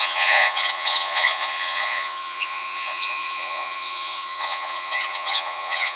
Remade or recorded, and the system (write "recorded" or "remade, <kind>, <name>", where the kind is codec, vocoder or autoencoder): remade, vocoder, Vocos